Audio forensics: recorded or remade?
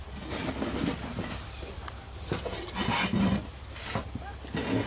recorded